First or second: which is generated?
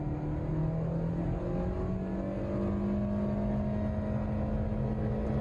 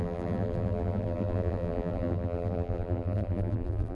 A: second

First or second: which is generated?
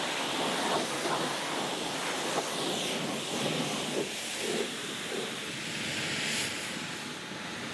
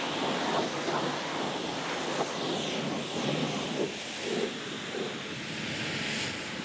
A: first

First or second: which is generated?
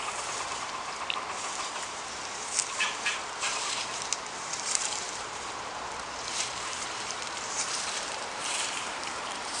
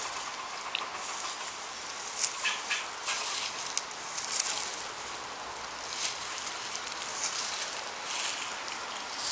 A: first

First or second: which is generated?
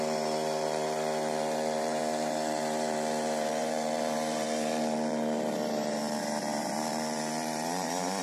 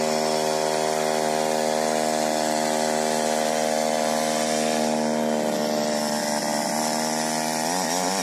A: first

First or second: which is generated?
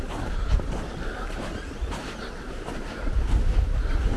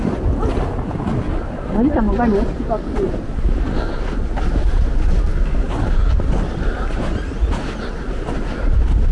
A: first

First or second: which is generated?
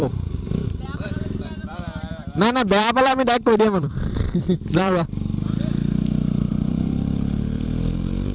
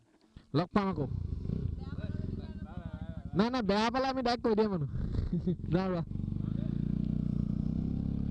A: first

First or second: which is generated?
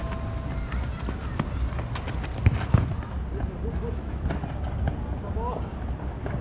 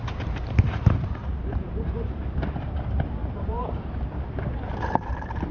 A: second